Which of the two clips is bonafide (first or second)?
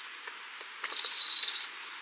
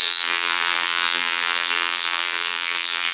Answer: first